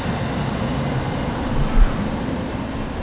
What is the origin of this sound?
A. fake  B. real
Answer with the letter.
B